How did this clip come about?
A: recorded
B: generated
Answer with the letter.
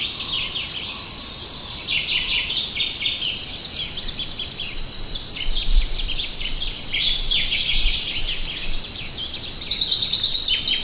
A